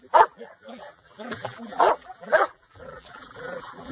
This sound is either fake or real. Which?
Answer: fake